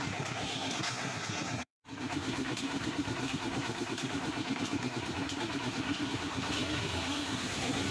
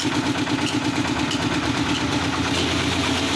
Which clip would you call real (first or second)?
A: second